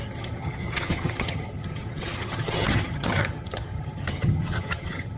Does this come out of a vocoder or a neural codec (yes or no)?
yes